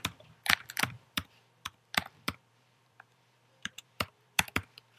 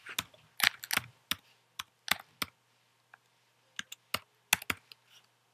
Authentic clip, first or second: second